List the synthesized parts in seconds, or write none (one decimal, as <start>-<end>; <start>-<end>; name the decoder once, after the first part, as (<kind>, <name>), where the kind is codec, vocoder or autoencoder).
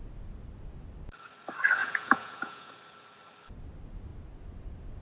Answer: 1.8-2.7 (vocoder, Vocos)